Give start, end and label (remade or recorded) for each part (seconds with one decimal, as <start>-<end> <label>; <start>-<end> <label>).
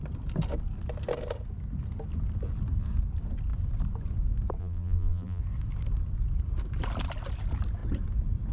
0.0-4.6 recorded; 4.6-5.4 remade; 5.4-8.5 recorded